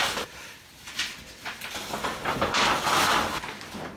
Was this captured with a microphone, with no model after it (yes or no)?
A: yes